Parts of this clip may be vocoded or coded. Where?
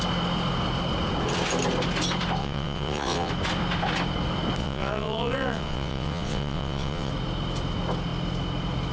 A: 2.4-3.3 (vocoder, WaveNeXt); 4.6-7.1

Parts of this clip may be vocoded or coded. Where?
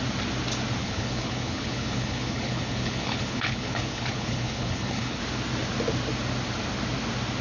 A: 0.8-5.2 (codec, HILCodec)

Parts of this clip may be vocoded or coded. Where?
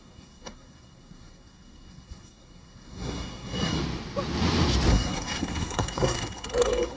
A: 0.0-3.8 (codec, SNAC); 4.9-7.0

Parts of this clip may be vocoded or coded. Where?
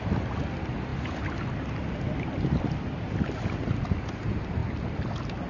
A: none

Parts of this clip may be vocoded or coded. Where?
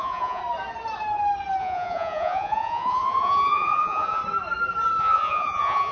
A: 0.0-0.4 (vocoder, Vocos); 1.6-4.2; 5.0-5.9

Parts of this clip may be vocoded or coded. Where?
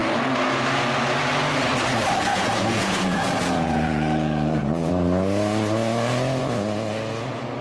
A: 2.3-4.9 (vocoder, Vocos)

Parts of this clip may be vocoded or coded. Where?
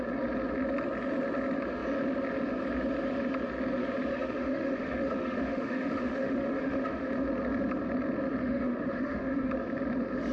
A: 4.1-7.1 (autoencoder, DAC-VAE); 8.4-9.5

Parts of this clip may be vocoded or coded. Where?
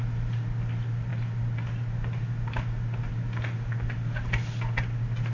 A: none